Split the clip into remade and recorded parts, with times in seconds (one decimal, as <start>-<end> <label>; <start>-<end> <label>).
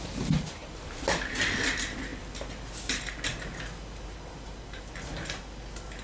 0.0-6.0 recorded